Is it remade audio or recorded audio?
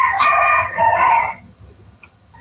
remade